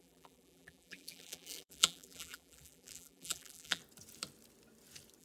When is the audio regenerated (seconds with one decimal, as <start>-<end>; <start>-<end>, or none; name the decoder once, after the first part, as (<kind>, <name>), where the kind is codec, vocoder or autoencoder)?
0.0-3.8 (vocoder, BigVGAN v2)